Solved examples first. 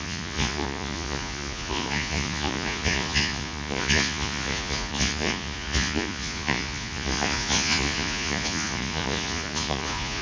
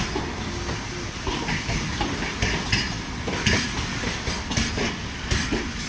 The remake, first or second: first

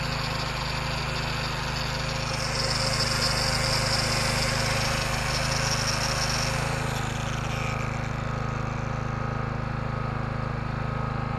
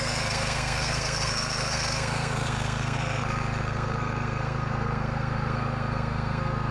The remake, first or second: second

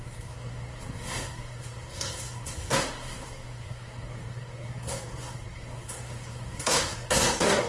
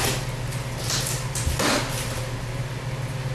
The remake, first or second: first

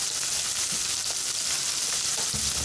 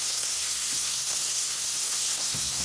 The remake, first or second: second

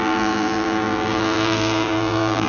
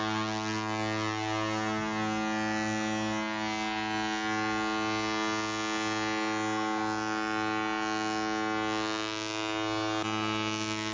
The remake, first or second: first